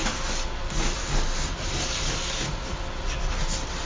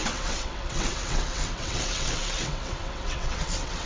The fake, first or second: second